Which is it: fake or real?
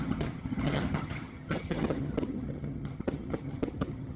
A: fake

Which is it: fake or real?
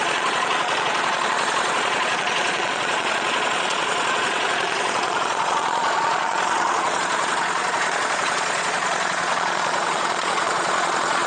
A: fake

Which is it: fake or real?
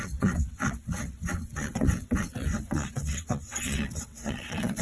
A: fake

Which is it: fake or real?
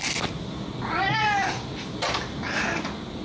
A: real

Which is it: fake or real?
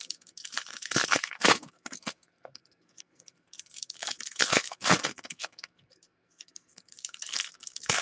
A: fake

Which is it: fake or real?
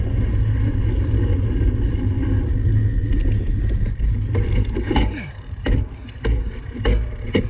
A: real